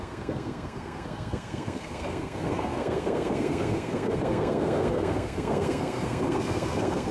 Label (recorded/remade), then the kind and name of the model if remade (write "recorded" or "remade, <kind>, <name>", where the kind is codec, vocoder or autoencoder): remade, codec, SNAC